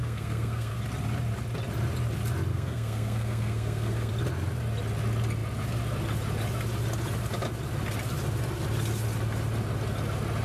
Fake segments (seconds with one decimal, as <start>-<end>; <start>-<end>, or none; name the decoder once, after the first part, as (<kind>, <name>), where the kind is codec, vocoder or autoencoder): 0.0-0.8 (codec, SNAC); 2.5-4.1